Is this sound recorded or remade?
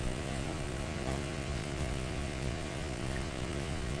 remade